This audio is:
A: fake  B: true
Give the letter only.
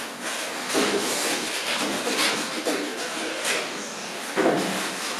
A